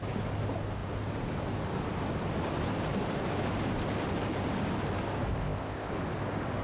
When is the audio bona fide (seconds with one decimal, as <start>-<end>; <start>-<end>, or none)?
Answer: 0.0-5.3; 5.9-6.6